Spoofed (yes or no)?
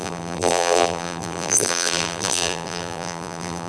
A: yes